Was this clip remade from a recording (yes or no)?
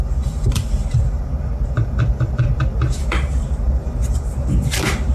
yes